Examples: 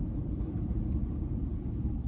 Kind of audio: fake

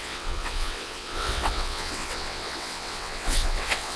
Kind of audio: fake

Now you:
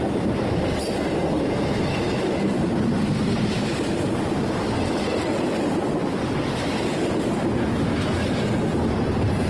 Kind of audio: fake